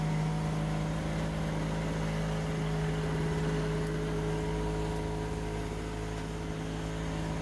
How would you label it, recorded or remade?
recorded